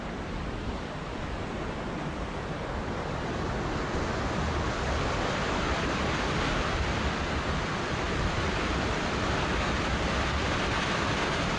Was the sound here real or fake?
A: real